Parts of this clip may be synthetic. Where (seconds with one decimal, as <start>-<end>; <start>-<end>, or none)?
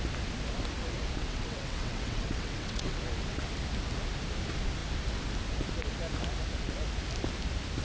1.2-3.0